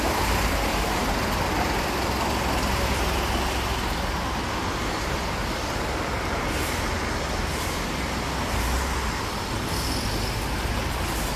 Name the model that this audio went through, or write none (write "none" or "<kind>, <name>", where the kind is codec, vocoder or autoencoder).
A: none